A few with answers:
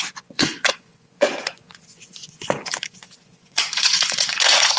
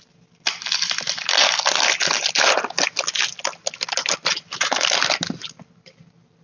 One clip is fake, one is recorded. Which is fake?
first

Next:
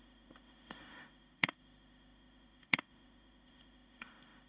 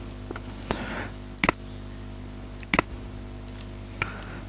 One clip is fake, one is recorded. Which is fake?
first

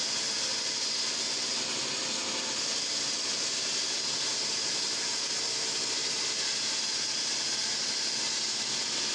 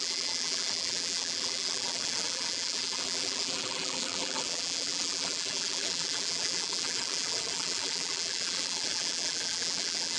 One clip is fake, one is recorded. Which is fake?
second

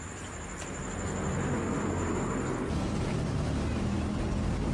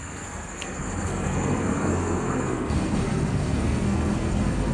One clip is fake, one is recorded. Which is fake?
second